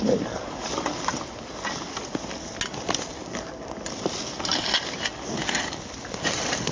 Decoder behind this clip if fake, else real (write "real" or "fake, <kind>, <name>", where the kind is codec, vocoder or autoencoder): real